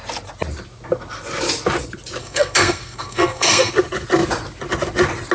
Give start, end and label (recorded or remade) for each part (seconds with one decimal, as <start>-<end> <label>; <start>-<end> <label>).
0.0-2.2 recorded; 2.2-3.7 remade; 3.7-5.3 recorded